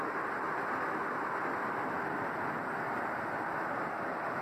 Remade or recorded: recorded